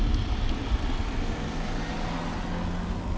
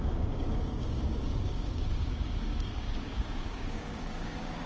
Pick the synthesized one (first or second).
second